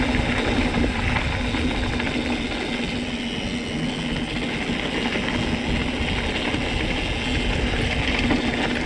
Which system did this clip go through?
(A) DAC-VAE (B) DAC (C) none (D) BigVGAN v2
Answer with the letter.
C